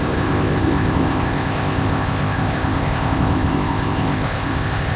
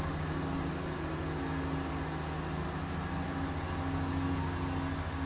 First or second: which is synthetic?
first